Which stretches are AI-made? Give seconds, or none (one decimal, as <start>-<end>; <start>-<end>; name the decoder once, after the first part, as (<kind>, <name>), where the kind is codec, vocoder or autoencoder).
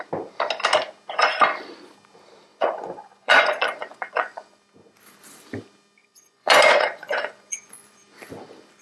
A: 2.5-4.6 (vocoder, Vocos); 6.0-8.0